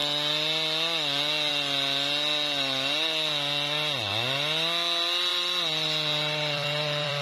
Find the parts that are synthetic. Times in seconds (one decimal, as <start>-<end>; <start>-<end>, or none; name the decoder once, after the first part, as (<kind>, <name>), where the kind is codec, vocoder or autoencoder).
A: 5.3-7.2 (vocoder, BigVGAN v2)